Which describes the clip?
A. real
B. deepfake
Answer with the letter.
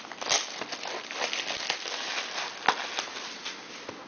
A